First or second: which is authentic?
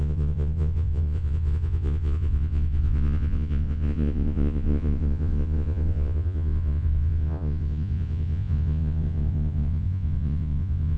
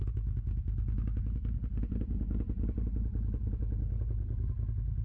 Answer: second